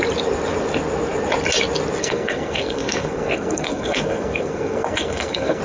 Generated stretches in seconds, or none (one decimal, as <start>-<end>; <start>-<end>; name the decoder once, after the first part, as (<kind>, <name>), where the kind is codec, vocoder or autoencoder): 2.0-5.6 (codec, SNAC)

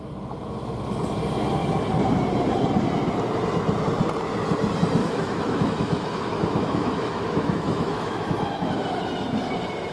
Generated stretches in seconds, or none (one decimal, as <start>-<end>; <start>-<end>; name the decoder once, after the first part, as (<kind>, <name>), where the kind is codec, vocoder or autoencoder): 5.0-8.7 (autoencoder, DAC-VAE)

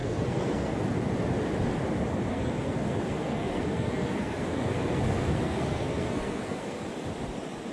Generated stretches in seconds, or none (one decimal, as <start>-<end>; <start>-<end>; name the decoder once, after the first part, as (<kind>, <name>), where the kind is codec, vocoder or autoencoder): 0.0-0.7 (codec, SNAC); 2.3-6.9

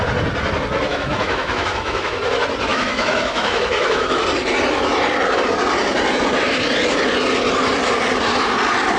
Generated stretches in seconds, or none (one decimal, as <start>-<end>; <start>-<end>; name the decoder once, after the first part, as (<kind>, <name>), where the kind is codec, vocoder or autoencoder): 0.9-2.2 (autoencoder, DAC-VAE); 2.7-4.2

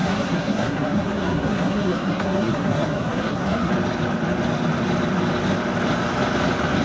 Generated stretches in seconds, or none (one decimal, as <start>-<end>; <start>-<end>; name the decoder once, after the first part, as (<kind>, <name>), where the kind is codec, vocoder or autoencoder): 0.0-3.7 (codec, SNAC)